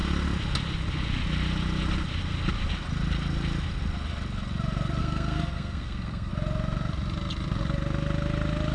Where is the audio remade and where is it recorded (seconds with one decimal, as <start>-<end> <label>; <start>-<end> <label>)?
0.0-5.0 recorded; 5.0-6.3 remade; 6.3-8.7 recorded